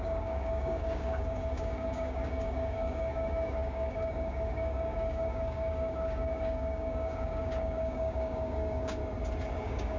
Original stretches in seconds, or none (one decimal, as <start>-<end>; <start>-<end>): 9.0-9.6